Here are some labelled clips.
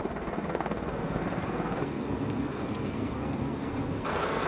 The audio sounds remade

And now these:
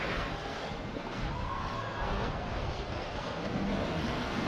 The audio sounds remade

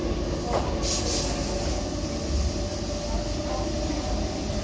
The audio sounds recorded